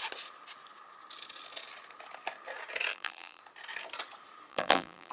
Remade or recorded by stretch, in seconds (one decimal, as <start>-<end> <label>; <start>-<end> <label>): 0.0-2.9 recorded; 2.9-3.4 remade; 3.4-4.5 recorded; 4.5-5.1 remade